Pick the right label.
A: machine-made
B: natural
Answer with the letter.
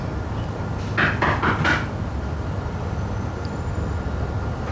B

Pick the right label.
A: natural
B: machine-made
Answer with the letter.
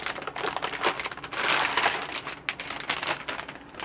A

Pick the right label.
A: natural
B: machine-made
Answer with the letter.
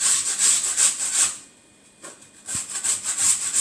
A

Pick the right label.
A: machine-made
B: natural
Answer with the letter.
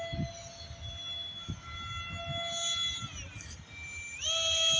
B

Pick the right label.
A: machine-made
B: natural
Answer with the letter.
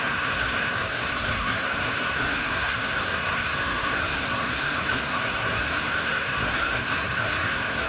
A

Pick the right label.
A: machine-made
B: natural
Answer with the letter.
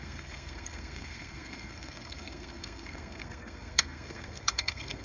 A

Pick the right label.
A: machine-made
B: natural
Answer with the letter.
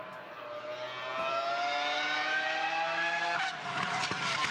B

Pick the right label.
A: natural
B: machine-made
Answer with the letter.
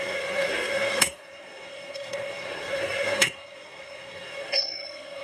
B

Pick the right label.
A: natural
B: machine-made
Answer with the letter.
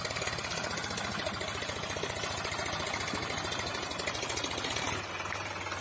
A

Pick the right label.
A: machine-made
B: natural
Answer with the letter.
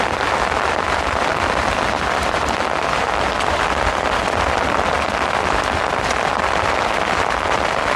B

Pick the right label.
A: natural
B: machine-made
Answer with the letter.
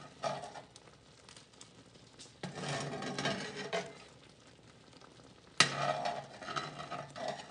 A